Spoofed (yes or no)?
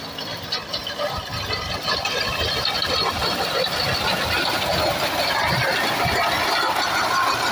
no